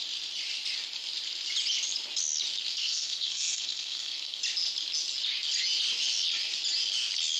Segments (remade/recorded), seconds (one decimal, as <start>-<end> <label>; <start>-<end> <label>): 0.0-2.7 recorded; 2.7-4.4 remade; 4.4-7.4 recorded